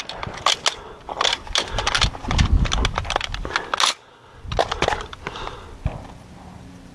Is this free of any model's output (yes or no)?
yes